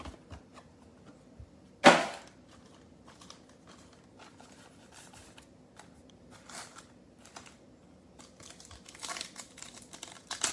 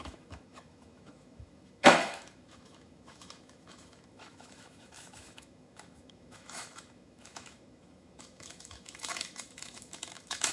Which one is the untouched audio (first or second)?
first